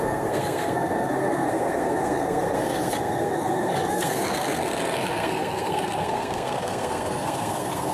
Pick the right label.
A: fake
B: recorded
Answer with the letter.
A